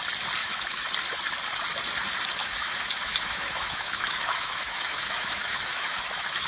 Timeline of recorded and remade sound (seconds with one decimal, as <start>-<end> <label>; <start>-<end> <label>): 0.0-0.4 recorded; 0.4-0.9 remade; 0.9-2.4 recorded; 2.4-6.5 remade